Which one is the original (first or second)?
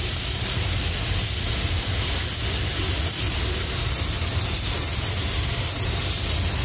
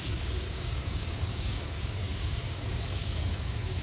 first